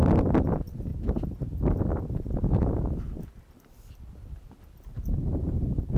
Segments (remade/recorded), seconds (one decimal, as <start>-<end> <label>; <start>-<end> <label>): 0.0-0.9 recorded; 0.9-4.5 remade; 4.5-4.9 recorded; 4.9-5.5 remade; 5.5-6.0 recorded